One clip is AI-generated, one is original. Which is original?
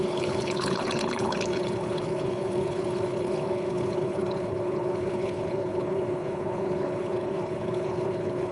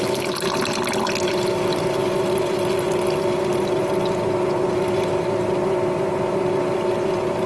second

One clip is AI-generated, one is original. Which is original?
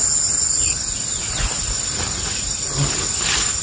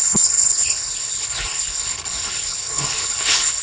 first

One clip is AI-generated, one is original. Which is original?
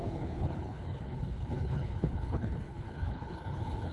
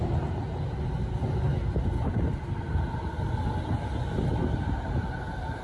second